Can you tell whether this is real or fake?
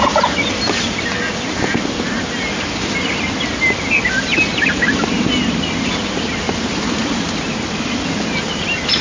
real